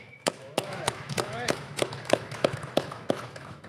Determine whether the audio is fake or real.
fake